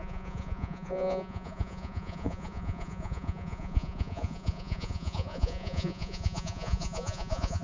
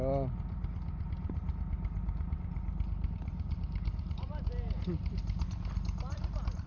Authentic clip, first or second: second